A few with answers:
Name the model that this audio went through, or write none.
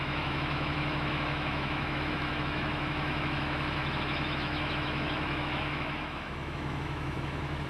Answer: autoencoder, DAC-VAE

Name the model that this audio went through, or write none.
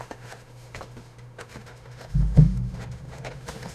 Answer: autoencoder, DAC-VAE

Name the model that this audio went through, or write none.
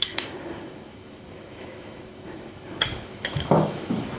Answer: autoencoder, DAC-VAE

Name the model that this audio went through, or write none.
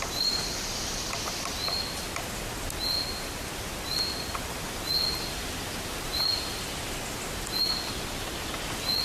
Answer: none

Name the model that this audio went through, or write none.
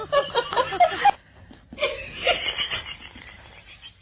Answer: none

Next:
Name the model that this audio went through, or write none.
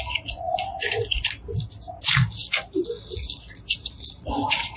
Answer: none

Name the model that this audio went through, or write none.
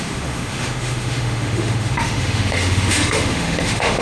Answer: autoencoder, DAC-VAE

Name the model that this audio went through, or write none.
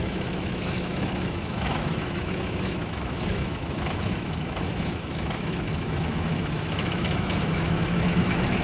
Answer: autoencoder, DAC-VAE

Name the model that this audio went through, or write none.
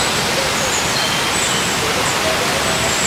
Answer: none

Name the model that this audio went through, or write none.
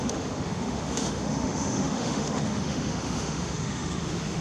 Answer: autoencoder, DAC-VAE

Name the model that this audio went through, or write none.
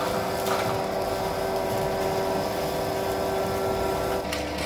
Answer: none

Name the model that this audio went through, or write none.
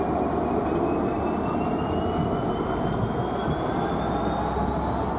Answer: none